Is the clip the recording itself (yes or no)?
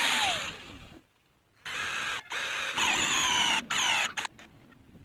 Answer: yes